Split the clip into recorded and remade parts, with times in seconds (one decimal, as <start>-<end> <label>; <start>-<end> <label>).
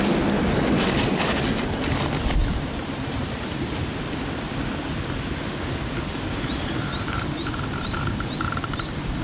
0.0-2.4 recorded; 2.4-4.2 remade; 4.2-6.3 recorded; 6.3-8.4 remade; 8.4-9.2 recorded